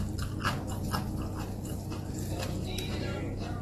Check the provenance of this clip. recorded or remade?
recorded